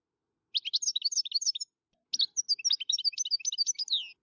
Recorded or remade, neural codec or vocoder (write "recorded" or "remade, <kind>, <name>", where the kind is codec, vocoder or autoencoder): recorded